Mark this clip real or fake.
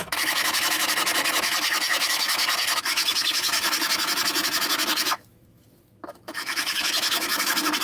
fake